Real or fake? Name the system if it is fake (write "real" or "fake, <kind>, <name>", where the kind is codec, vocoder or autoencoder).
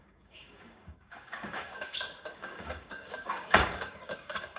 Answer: fake, codec, DAC